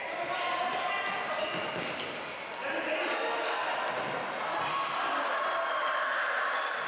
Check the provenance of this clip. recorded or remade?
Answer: recorded